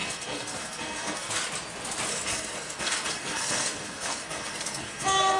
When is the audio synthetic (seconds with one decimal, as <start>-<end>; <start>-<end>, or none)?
0.0-1.3; 2.1-5.4